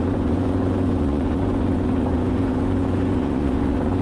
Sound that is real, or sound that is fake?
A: fake